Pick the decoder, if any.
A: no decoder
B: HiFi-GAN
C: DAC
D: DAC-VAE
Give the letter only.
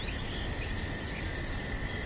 A